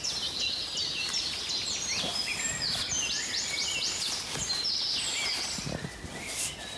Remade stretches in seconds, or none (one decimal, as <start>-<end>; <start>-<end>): none